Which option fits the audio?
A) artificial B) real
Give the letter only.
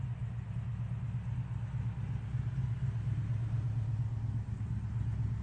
B